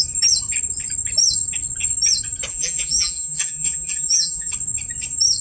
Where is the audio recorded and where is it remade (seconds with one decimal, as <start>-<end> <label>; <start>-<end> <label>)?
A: 0.0-2.5 recorded; 2.5-4.5 remade; 4.5-5.4 recorded

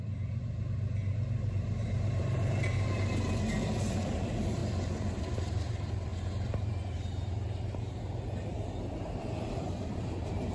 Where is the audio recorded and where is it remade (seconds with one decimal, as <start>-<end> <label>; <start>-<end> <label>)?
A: 0.0-4.6 remade; 4.6-5.3 recorded; 5.3-10.5 remade